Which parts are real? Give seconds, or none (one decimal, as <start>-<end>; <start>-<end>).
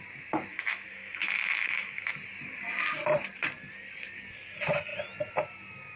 0.0-0.5; 2.1-6.0